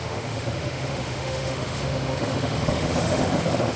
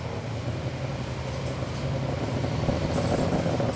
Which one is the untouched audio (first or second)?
second